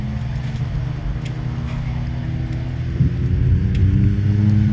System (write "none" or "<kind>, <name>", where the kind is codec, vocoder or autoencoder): none